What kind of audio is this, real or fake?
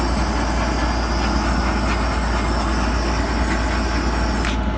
real